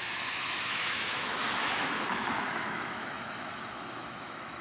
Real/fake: fake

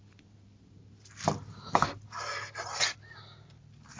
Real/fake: real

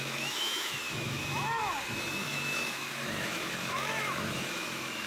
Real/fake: fake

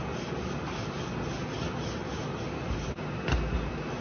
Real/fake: real